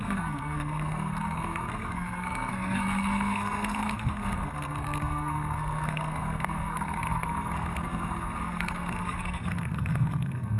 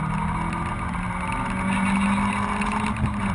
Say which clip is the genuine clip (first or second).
second